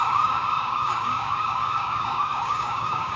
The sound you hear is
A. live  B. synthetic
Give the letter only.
B